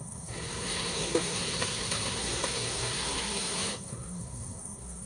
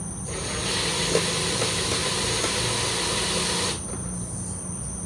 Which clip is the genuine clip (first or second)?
second